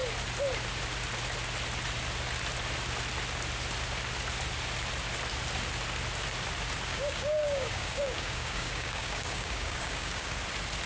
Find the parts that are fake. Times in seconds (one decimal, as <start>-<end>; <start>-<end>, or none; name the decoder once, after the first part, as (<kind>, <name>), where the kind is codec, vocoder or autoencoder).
6.9-10.3 (codec, DAC)